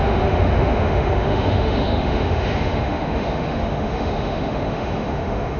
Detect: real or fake fake